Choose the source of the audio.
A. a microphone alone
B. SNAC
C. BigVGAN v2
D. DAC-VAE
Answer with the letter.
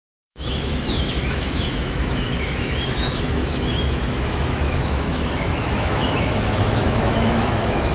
D